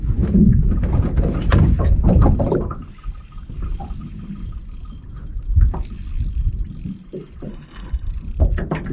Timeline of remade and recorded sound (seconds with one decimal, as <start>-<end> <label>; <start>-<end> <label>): 0.0-7.5 recorded; 7.5-8.1 remade; 8.1-8.9 recorded